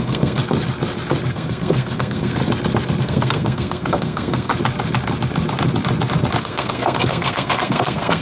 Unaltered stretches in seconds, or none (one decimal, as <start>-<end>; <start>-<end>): 0.4-1.3; 2.4-3.0; 4.5-6.4